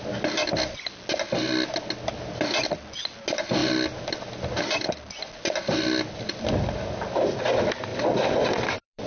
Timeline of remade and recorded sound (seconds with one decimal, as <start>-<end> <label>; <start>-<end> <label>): 0.0-7.9 recorded; 7.9-9.1 remade